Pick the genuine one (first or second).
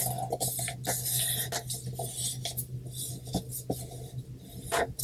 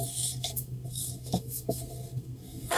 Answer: first